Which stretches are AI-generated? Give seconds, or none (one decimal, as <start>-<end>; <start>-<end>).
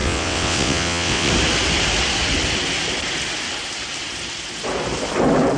0.0-1.3